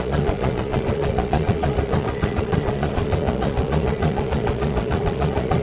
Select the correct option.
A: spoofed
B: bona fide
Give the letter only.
A